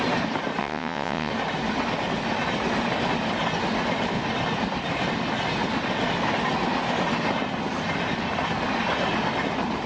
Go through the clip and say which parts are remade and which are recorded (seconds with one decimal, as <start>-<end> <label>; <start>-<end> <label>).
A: 0.0-0.6 recorded; 0.6-1.3 remade; 1.3-9.9 recorded